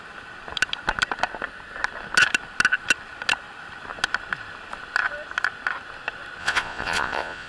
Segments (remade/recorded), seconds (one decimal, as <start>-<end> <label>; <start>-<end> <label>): 0.0-6.4 recorded; 6.4-7.5 remade